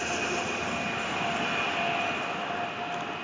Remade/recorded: recorded